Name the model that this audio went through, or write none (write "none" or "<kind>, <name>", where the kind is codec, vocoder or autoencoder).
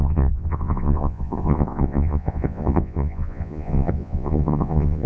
vocoder, Vocos